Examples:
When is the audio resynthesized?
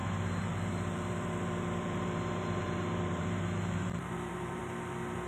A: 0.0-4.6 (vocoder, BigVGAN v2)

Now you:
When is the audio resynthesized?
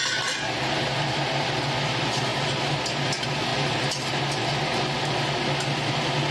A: 3.5-4.2 (vocoder, BigVGAN v2)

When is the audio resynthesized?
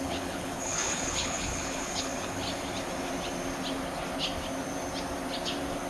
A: 0.0-2.1 (codec, HILCodec)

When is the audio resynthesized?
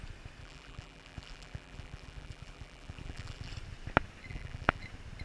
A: 0.4-3.5 (vocoder, BigVGAN v2); 4.3-4.8